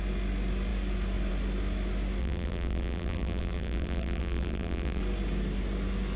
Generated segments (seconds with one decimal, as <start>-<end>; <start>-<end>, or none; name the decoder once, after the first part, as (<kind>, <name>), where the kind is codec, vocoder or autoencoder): 2.2-5.0 (vocoder, BigVGAN v2)